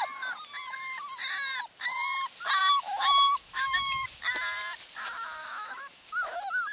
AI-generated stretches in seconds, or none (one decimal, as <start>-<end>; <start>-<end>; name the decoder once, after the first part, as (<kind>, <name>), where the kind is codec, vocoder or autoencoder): 2.6-4.2 (autoencoder, DAC-VAE); 5.4-6.7